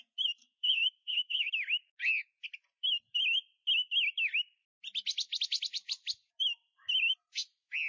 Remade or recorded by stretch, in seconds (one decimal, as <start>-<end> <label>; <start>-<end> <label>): 0.0-0.4 recorded; 0.4-1.5 remade; 1.5-7.9 recorded